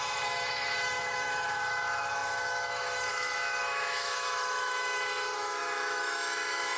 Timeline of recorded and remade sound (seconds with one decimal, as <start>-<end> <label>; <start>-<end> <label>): 0.0-6.8 remade